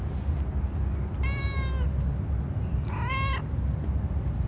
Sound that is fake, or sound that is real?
real